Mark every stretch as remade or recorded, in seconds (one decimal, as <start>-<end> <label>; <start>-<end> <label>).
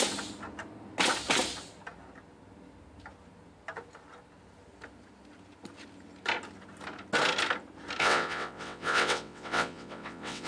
0.0-8.0 recorded; 8.0-10.5 remade